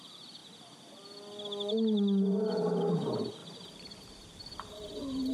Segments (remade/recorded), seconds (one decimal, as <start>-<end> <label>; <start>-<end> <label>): 0.0-3.4 recorded; 3.4-5.3 remade